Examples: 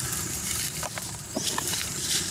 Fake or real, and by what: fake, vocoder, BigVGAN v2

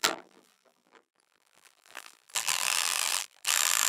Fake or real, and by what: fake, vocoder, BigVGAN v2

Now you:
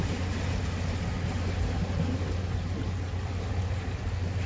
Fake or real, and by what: real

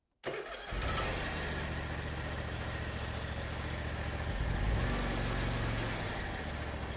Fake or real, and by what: real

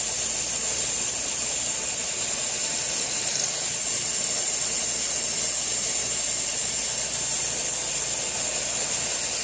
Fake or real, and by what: real